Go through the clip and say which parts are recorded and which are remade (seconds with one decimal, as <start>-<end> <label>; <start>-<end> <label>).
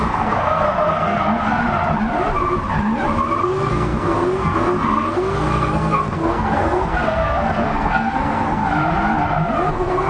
0.0-1.6 remade; 1.6-3.4 recorded; 3.4-8.6 remade; 8.6-9.7 recorded; 9.7-10.1 remade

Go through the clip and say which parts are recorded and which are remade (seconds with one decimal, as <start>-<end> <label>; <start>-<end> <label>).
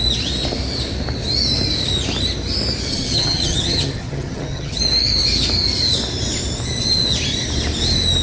0.0-2.9 recorded; 2.9-4.8 remade; 4.8-8.2 recorded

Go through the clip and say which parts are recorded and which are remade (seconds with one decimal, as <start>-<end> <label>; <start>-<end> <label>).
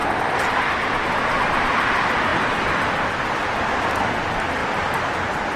0.0-0.7 remade; 0.7-2.3 recorded; 2.3-3.7 remade; 3.7-4.6 recorded; 4.6-5.6 remade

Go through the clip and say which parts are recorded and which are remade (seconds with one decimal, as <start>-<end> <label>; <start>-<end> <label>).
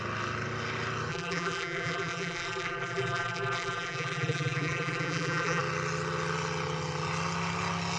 0.0-1.1 recorded; 1.1-5.6 remade; 5.6-8.0 recorded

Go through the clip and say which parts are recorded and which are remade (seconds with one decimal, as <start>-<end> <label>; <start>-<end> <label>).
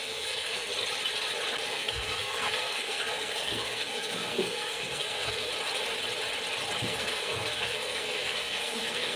0.0-0.7 remade; 0.7-1.7 recorded; 1.7-5.5 remade; 5.5-6.8 recorded; 6.8-9.2 remade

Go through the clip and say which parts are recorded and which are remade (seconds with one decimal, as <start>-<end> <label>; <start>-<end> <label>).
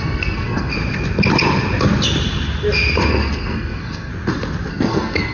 0.0-0.7 remade; 0.7-3.1 recorded; 3.1-4.1 remade; 4.1-4.7 recorded; 4.7-5.3 remade